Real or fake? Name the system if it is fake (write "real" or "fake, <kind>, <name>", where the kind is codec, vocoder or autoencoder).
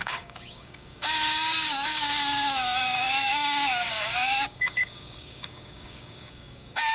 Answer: fake, codec, DAC